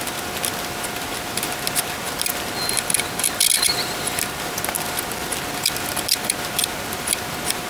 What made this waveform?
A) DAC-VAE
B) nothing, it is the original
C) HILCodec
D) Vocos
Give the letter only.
B